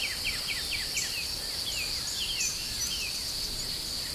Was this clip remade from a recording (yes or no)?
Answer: no